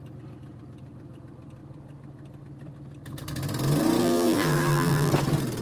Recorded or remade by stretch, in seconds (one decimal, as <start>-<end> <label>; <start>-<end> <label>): 0.0-4.0 recorded; 4.0-5.1 remade; 5.1-5.6 recorded